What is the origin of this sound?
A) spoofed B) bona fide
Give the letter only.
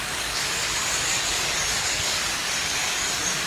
A